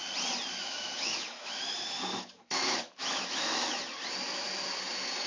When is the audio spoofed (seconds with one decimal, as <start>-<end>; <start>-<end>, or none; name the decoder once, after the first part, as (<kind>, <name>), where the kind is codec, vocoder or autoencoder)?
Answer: 0.6-3.8 (autoencoder, DAC-VAE)